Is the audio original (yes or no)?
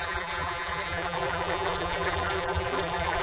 no